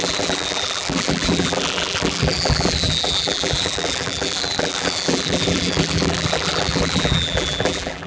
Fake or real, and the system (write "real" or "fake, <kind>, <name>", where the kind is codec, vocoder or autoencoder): fake, vocoder, BigVGAN v2